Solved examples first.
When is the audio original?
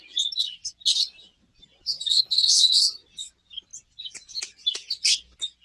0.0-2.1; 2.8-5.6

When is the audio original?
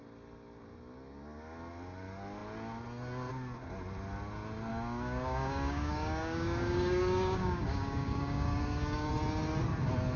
0.0-4.7; 9.1-10.2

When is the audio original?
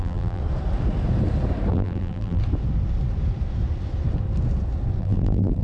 0.4-1.7; 2.4-5.0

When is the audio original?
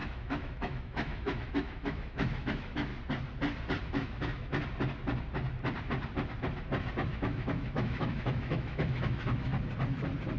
2.9-3.8; 4.6-7.1; 9.5-10.4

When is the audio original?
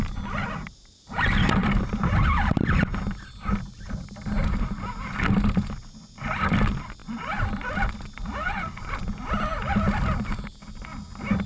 0.0-11.5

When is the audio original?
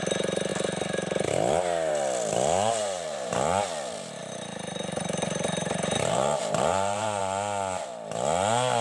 0.0-2.8; 3.3-4.2; 7.2-8.8